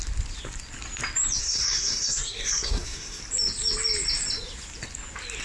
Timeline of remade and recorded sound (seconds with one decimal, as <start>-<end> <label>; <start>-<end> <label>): 0.0-1.4 recorded; 1.4-3.2 remade; 3.2-5.4 recorded